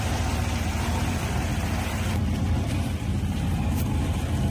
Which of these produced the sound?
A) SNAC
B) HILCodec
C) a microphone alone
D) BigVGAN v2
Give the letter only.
D